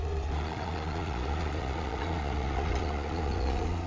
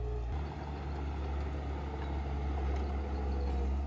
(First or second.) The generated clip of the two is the first